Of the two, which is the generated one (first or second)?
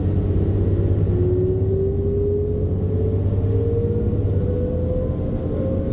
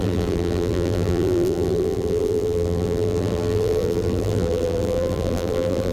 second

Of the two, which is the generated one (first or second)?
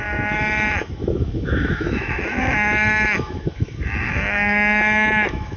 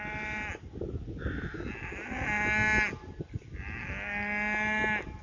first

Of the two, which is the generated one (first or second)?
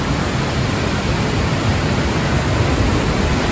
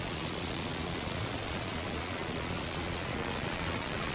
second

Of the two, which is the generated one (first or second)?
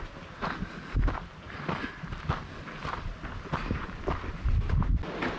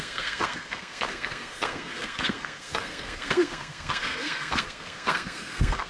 second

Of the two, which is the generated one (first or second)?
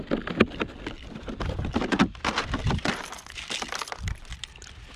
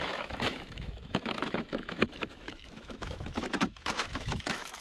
second